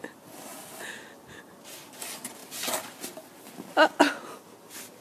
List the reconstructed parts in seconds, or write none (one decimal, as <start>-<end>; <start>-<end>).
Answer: 2.4-3.5